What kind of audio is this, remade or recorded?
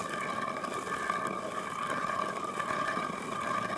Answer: recorded